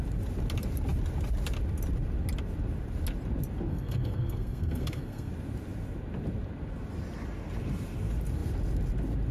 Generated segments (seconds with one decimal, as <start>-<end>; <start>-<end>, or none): 3.7-5.3